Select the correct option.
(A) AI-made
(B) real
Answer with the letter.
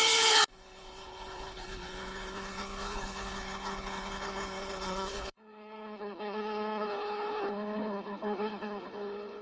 A